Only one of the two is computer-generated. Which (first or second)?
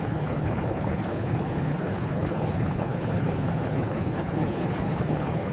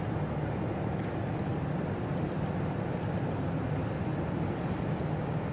first